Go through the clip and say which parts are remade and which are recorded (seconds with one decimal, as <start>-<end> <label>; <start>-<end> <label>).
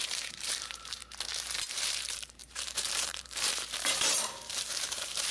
0.0-1.0 remade; 1.0-1.7 recorded; 1.7-5.3 remade